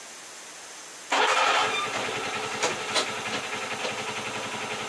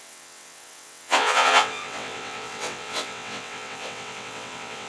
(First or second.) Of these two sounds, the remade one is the second